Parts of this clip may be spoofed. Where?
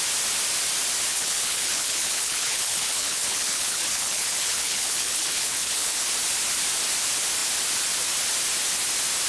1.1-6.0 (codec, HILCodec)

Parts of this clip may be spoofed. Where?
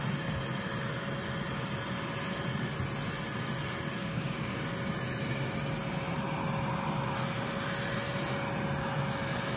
4.0-4.6 (codec, DAC)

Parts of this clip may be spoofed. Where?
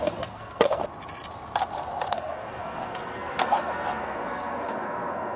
0.0-0.8 (codec, SNAC); 2.1-5.4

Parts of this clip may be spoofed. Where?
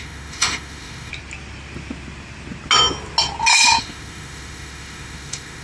0.0-1.1 (autoencoder, DAC-VAE); 3.8-5.6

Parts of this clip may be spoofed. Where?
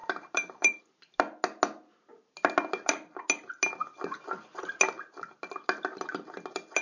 0.0-0.8 (vocoder, BigVGAN v2)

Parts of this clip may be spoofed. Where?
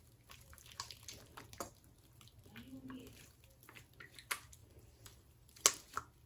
4.6-5.5 (vocoder, BigVGAN v2)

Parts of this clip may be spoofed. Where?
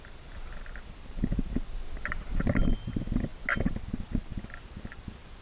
0.0-1.8 (vocoder, BigVGAN v2); 2.4-3.3; 3.9-5.4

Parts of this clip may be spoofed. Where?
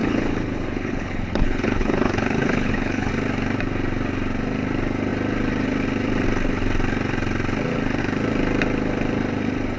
0.0-3.1 (codec, HILCodec)